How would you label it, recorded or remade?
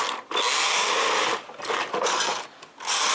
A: recorded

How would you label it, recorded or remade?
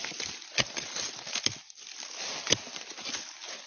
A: recorded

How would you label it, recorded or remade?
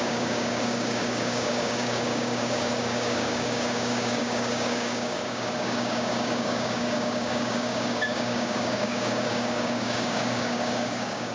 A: remade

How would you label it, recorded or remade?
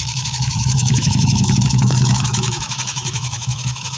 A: remade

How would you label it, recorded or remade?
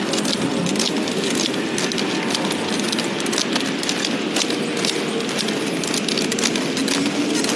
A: recorded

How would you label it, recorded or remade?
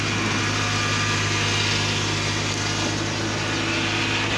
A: recorded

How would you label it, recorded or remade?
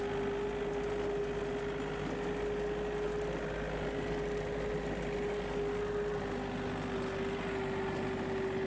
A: recorded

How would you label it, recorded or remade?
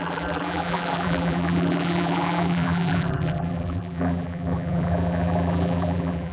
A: remade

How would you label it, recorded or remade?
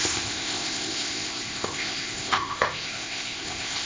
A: remade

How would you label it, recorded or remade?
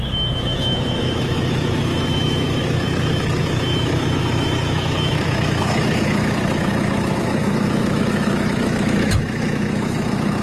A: remade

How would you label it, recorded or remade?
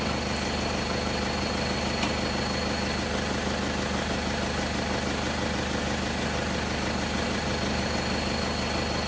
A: recorded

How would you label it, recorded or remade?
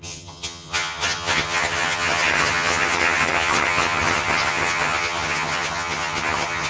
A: remade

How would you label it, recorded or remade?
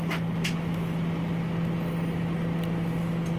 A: recorded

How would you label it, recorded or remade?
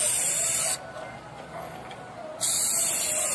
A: recorded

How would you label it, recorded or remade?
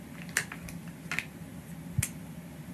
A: recorded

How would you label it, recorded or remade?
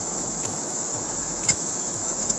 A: remade